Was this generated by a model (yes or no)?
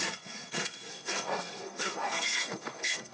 yes